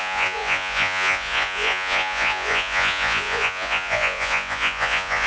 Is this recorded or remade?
remade